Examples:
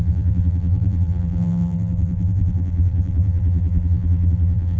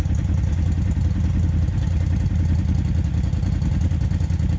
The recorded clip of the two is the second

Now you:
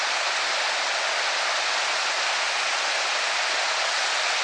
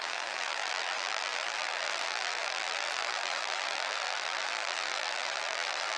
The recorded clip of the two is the first